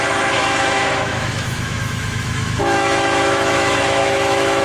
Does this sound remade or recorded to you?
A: remade